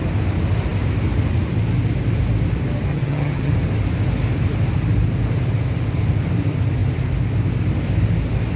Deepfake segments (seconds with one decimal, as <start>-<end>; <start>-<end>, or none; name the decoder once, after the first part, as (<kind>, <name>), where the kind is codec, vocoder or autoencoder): 2.9-3.5 (vocoder, HiFi-GAN)